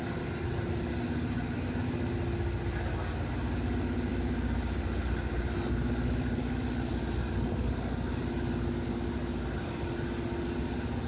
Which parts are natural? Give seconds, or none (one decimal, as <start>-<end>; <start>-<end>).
0.0-11.1